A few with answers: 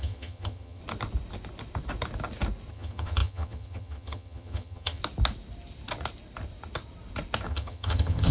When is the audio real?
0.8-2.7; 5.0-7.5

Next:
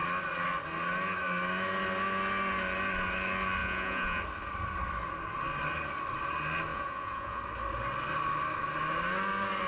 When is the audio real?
0.0-3.6; 4.2-6.7; 7.4-9.7

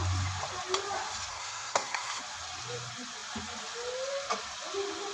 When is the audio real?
0.0-1.3; 2.2-5.1

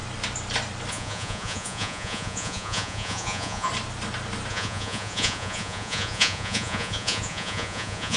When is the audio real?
0.0-0.9; 3.7-4.5